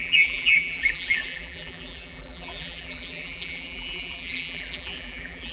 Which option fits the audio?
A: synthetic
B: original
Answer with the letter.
A